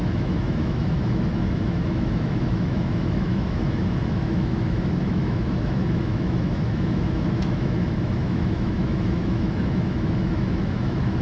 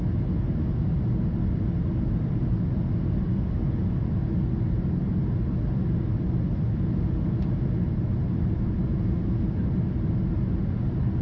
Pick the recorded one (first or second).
second